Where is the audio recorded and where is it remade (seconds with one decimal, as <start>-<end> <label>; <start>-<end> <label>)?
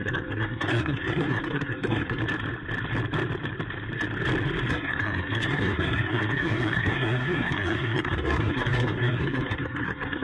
0.0-2.2 remade; 2.2-4.7 recorded; 4.7-10.2 remade